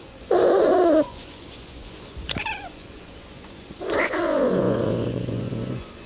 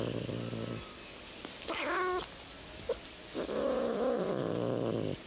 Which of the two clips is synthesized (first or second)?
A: first